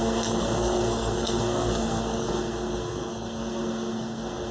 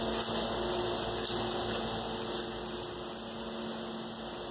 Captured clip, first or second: second